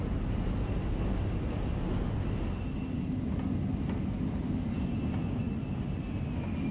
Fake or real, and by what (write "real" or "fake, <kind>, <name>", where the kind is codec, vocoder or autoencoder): real